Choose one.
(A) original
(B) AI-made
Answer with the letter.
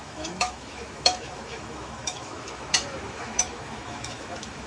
B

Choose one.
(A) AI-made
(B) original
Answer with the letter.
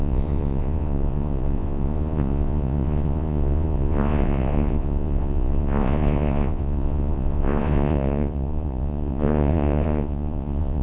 A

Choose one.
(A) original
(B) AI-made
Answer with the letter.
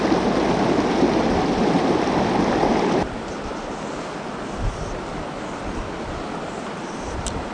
A